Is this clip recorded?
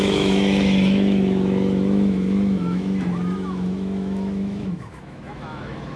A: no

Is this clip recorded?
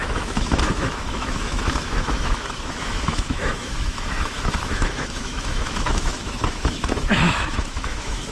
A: no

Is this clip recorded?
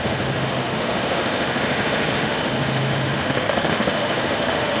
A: no